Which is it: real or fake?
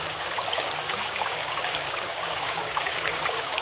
fake